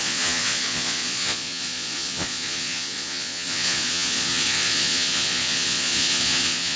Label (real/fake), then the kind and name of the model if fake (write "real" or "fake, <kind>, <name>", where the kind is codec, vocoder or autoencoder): fake, vocoder, Vocos